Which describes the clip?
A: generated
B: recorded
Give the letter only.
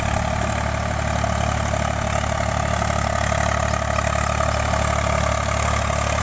B